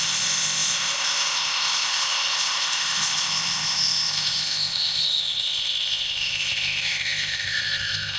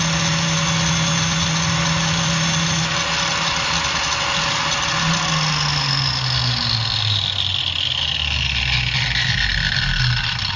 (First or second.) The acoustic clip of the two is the second